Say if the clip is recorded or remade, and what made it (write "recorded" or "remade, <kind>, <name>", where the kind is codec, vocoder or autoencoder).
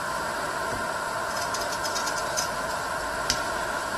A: recorded